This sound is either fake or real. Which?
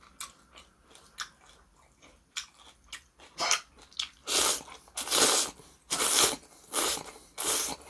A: real